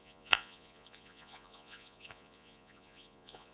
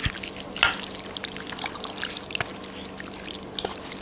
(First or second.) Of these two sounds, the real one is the second